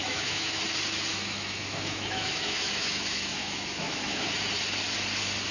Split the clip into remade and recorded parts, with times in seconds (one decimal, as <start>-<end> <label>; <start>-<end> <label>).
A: 0.0-0.6 remade; 0.6-1.1 recorded; 1.1-4.3 remade; 4.3-5.5 recorded

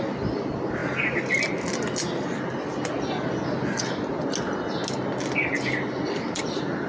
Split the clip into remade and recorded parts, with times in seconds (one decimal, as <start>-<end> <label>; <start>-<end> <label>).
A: 0.0-6.9 recorded

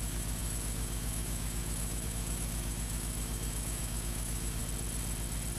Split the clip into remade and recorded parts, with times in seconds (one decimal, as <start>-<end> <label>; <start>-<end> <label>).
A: 0.0-4.6 remade; 4.6-5.6 recorded

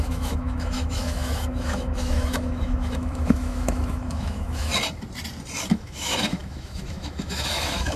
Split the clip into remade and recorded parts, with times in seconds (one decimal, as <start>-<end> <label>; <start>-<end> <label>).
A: 0.0-4.7 remade; 4.7-5.7 recorded; 5.7-8.0 remade

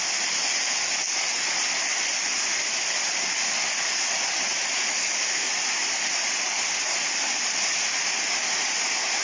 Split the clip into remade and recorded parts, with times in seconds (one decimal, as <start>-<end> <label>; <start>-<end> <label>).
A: 0.0-4.6 recorded; 4.6-5.5 remade; 5.5-9.2 recorded

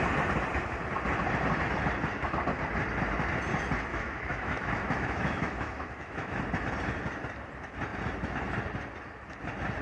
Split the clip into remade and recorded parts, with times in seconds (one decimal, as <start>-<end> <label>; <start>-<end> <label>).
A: 0.0-3.9 recorded; 3.9-6.4 remade; 6.4-9.8 recorded

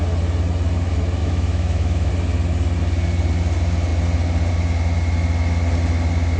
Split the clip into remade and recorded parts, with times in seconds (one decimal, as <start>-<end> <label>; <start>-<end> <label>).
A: 0.0-1.2 recorded; 1.2-2.1 remade; 2.1-6.4 recorded